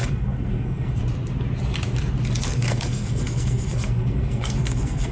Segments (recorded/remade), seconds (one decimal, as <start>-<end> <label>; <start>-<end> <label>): 0.0-1.0 remade; 1.0-2.4 recorded; 2.4-5.1 remade